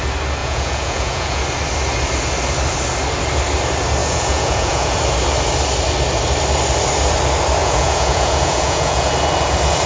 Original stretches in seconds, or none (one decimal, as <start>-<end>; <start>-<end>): 0.0-0.4; 1.4-4.0; 5.0-7.6; 9.1-9.9